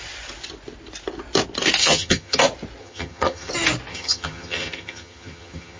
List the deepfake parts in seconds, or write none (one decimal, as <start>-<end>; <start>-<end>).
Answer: 1.8-2.4; 2.8-3.5; 3.9-5.8